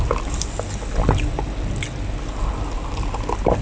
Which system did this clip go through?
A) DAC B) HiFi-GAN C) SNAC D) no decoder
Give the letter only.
D